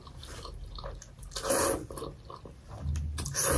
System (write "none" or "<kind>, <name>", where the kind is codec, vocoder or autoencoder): none